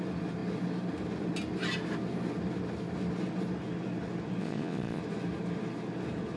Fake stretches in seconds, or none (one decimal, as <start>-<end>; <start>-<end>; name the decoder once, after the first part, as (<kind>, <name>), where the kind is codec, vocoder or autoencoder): 4.4-5.0 (vocoder, Vocos)